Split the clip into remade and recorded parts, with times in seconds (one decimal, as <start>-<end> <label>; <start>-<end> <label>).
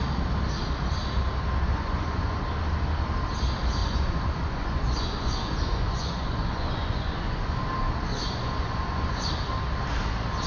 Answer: 0.0-1.7 recorded; 1.7-2.4 remade; 2.4-3.8 recorded; 3.8-7.6 remade; 7.6-8.1 recorded; 8.1-9.3 remade; 9.3-10.5 recorded